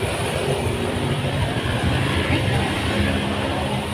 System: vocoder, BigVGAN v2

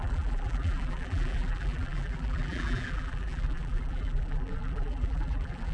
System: vocoder, BigVGAN v2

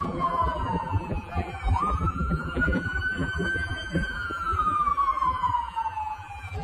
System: vocoder, BigVGAN v2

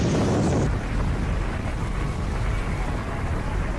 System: none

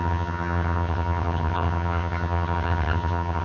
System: vocoder, HiFi-GAN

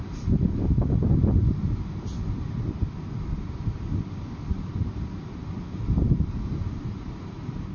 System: none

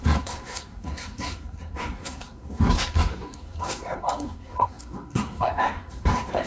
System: codec, SNAC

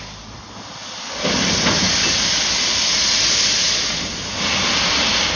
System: none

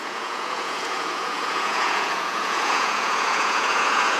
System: vocoder, Vocos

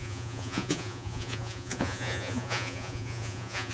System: vocoder, Vocos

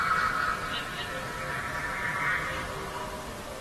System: none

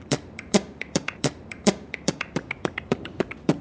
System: vocoder, BigVGAN v2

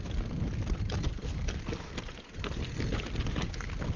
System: none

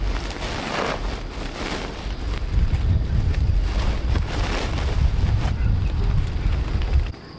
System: none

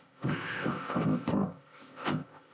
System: codec, ZipCodec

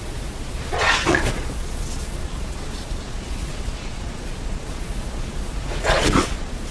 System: vocoder, Vocos